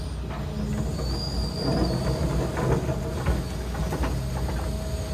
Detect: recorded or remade recorded